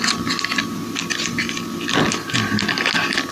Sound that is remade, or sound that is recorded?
recorded